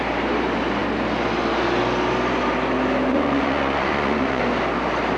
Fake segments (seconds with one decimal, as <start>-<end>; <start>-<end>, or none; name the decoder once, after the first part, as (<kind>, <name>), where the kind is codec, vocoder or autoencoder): 3.1-4.4 (vocoder, Vocos)